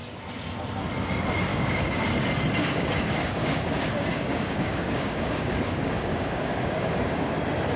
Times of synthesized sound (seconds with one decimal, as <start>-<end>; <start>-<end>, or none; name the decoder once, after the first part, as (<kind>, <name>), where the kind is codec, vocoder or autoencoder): 1.5-2.1 (codec, DAC); 2.6-7.3